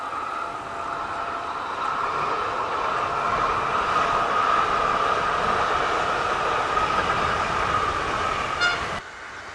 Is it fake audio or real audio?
real